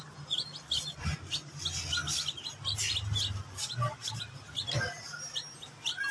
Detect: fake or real real